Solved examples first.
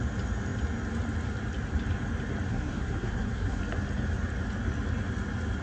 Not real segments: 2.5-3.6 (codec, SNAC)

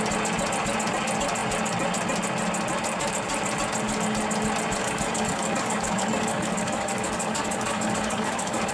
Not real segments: 4.8-8.7 (codec, DAC)